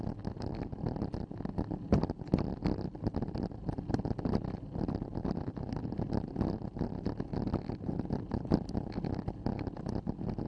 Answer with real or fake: real